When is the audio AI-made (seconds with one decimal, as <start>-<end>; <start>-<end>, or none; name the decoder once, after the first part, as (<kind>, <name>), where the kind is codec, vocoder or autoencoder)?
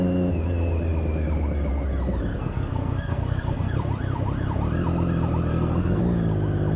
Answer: 2.3-3.7 (codec, SNAC); 5.5-6.0